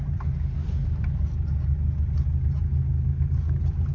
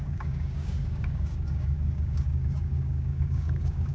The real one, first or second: first